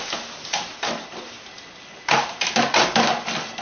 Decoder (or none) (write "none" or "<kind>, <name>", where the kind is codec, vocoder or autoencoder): none